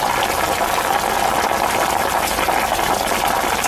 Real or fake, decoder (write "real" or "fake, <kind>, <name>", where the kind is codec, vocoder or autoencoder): real